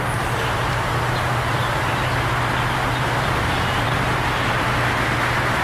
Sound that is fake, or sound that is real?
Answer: fake